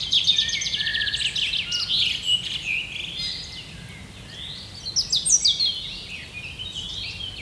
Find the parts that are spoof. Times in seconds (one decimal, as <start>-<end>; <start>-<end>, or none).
none